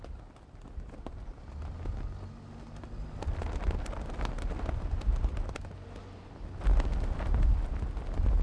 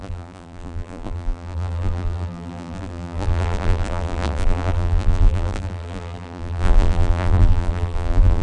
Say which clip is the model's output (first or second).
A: second